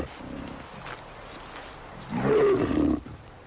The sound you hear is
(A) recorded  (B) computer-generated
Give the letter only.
A